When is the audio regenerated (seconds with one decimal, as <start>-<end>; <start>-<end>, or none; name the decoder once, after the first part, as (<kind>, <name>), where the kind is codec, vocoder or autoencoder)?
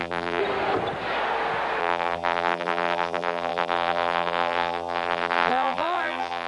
0.0-0.4 (vocoder, BigVGAN v2); 1.8-6.5